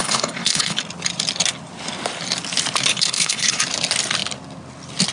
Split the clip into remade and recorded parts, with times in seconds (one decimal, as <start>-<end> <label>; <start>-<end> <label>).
0.0-0.8 remade; 0.8-2.9 recorded; 2.9-3.6 remade; 3.6-5.1 recorded